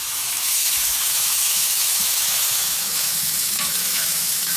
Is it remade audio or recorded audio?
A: remade